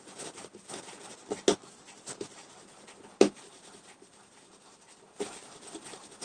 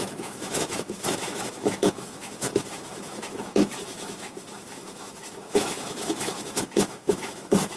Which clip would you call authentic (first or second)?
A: first